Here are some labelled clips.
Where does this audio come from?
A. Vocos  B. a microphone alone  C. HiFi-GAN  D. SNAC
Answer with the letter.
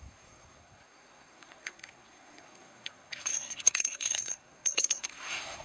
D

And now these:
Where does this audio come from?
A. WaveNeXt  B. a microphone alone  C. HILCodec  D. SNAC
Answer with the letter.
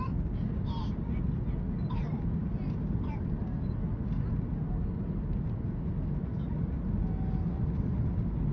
B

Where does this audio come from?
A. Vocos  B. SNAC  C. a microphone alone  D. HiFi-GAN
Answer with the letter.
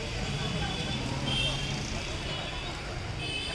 C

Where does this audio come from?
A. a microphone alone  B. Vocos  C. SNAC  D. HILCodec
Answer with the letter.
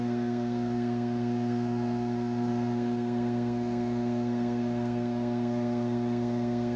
C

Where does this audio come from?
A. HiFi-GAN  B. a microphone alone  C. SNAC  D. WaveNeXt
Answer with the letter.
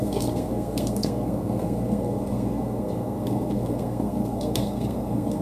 C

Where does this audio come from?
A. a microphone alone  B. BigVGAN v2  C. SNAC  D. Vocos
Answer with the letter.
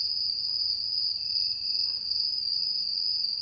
A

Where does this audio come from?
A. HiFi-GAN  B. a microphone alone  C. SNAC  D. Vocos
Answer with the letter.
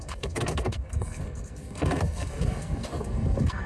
C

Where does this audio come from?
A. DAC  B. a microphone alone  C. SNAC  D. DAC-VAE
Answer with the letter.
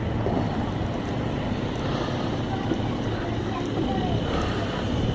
B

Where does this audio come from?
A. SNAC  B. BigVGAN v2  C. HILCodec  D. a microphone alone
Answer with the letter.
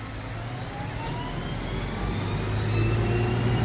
D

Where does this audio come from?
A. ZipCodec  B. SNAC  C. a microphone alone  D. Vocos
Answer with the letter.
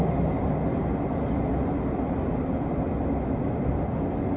C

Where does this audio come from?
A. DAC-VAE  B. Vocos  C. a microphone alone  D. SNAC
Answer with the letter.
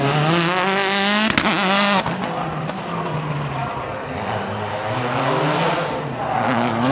C